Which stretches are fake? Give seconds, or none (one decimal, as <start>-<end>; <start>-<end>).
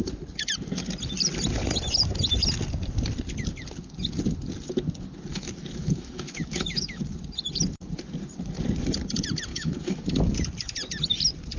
5.3-7.0; 9.5-10.4